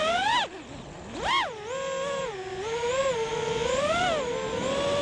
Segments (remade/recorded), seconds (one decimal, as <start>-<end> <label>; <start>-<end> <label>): 0.0-5.0 recorded